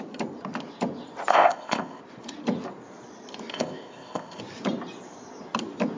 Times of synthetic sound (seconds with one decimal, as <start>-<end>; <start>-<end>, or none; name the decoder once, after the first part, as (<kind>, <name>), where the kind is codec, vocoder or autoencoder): 1.3-2.0 (codec, ZipCodec); 3.5-4.4

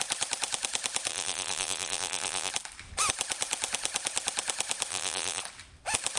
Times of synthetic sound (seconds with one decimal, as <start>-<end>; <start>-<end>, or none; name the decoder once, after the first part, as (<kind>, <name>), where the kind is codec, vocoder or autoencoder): 1.1-2.5 (vocoder, BigVGAN v2); 4.9-5.4

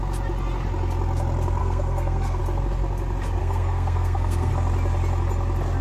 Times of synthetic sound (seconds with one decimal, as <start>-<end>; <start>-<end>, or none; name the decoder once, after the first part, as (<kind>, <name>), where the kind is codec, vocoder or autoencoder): 1.6-2.4 (codec, SNAC); 3.4-4.5

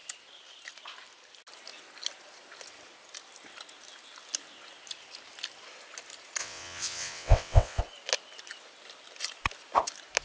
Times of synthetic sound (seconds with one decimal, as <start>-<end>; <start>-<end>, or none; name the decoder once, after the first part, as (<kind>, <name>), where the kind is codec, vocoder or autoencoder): 6.4-7.8 (vocoder, WaveNeXt)

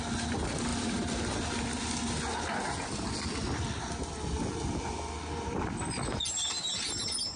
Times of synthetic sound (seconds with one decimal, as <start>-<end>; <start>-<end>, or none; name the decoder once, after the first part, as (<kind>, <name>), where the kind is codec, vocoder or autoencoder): none

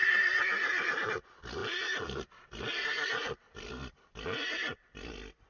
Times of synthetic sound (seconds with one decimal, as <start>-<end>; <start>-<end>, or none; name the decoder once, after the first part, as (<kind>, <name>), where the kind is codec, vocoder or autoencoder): 0.0-1.1 (vocoder, BigVGAN v2); 1.6-3.7

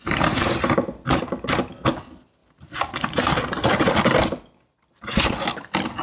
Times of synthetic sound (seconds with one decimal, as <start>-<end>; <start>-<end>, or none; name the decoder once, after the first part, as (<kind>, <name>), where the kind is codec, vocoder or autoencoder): none

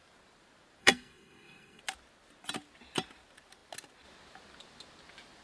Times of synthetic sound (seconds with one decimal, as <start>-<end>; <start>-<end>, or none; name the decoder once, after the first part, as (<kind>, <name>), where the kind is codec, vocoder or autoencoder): 0.8-1.8 (codec, SNAC)